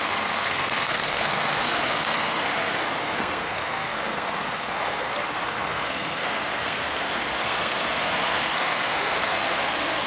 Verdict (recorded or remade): remade